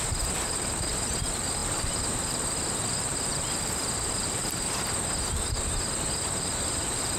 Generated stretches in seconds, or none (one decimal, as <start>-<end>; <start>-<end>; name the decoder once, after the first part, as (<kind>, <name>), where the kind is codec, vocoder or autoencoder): 0.0-4.4 (vocoder, BigVGAN v2); 6.5-7.2